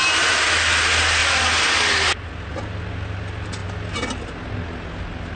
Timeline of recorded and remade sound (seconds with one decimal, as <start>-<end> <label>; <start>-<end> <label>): 0.0-5.4 recorded